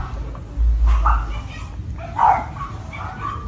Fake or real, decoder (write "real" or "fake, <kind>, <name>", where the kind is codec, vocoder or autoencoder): real